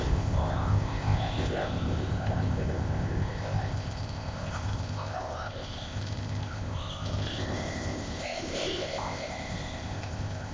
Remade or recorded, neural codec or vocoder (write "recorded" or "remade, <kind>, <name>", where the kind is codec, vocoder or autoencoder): remade, codec, ZipCodec